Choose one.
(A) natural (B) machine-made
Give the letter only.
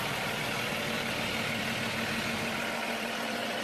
A